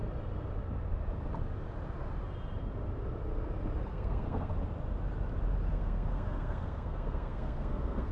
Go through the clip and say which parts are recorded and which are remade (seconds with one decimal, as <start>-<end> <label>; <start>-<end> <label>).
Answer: 0.0-3.9 recorded; 3.9-4.5 remade; 4.5-5.7 recorded; 5.7-8.1 remade

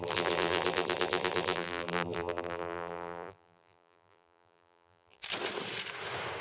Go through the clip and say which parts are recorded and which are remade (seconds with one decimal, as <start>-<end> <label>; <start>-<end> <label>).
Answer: 0.0-5.2 remade; 5.2-6.4 recorded

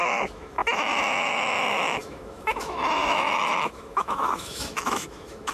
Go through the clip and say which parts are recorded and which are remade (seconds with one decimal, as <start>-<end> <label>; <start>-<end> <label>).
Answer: 0.0-5.5 remade